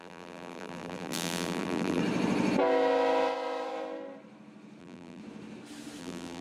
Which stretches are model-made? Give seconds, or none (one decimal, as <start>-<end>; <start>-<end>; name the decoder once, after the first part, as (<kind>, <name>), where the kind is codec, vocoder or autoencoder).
0.0-2.0 (vocoder, BigVGAN v2); 4.8-5.2; 6.0-6.4

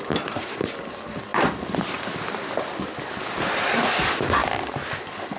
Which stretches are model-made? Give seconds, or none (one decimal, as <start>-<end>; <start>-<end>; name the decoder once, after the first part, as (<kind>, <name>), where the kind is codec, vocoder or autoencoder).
0.0-5.4 (vocoder, BigVGAN v2)

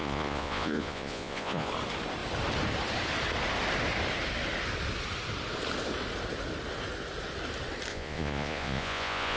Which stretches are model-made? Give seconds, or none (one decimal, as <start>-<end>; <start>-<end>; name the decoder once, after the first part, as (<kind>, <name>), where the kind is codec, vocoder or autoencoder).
0.0-1.7 (vocoder, Vocos); 7.9-9.4

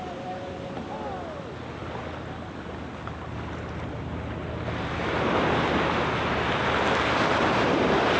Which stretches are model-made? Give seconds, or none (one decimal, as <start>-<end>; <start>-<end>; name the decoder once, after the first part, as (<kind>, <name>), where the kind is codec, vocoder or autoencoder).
none

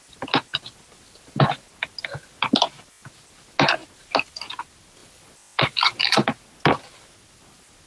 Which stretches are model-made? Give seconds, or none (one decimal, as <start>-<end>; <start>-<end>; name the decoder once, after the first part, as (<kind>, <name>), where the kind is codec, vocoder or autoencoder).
5.0-6.1 (vocoder, BigVGAN v2)

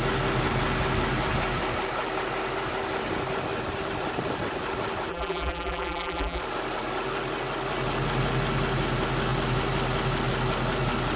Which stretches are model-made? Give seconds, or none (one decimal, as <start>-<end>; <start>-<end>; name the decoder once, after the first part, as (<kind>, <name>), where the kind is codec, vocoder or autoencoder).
5.1-6.4 (vocoder, BigVGAN v2)

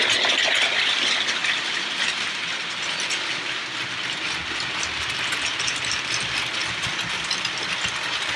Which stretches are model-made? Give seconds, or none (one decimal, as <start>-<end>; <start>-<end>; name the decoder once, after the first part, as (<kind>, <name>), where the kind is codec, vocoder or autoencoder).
none